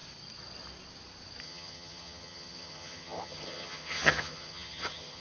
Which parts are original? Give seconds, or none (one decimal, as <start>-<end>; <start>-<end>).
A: 0.0-1.4